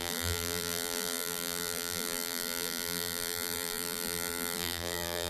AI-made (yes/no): yes